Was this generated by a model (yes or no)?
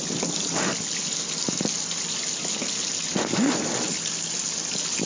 no